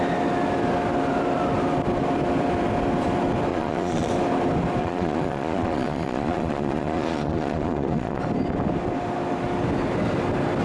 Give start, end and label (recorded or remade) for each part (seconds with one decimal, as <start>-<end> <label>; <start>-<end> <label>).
0.0-3.5 recorded; 3.5-4.1 remade; 4.1-4.8 recorded; 4.8-8.2 remade; 8.2-10.6 recorded